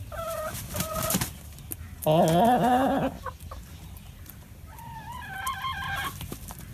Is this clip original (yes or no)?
yes